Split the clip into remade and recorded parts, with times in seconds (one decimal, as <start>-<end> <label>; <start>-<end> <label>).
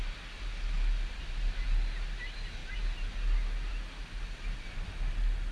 0.0-5.5 recorded